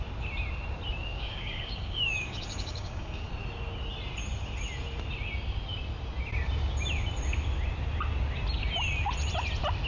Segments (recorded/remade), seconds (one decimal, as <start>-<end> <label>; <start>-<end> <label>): 0.0-1.1 recorded; 1.1-3.3 remade; 3.3-9.9 recorded